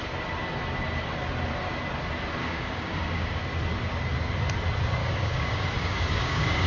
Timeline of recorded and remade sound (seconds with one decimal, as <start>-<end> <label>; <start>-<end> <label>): 0.0-2.4 recorded; 2.4-3.4 remade; 3.4-5.0 recorded; 5.0-6.7 remade